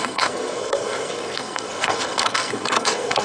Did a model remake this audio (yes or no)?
yes